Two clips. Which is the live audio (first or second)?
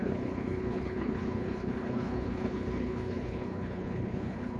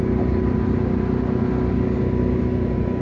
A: second